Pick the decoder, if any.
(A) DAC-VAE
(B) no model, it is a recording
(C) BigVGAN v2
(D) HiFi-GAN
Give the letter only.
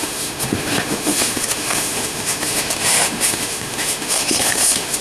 A